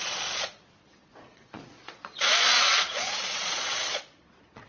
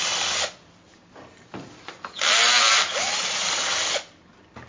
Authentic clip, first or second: second